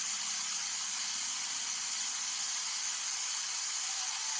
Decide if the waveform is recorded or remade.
recorded